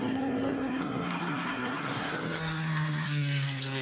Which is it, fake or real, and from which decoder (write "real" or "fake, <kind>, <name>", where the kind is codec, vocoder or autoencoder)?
fake, codec, SNAC